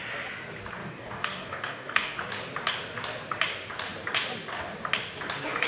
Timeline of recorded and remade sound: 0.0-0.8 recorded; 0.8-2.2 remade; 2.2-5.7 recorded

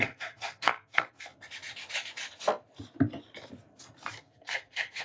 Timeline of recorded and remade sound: 0.0-1.3 remade; 1.3-4.2 recorded; 4.2-5.0 remade

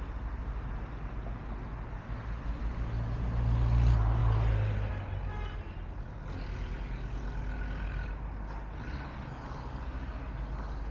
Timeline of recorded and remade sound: 0.0-10.9 recorded

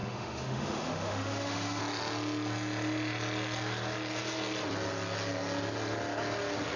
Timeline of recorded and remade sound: 0.0-1.8 remade; 1.8-6.8 recorded

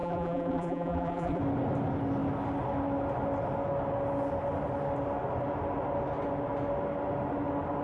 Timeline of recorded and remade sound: 0.0-1.4 remade; 1.4-7.8 recorded

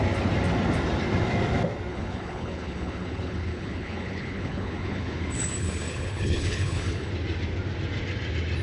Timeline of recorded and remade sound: 0.0-1.9 recorded; 1.9-7.1 remade; 7.1-8.6 recorded